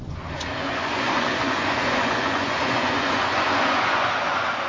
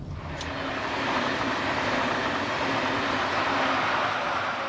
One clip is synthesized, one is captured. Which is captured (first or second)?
second